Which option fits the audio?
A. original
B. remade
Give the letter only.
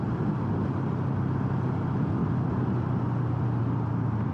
A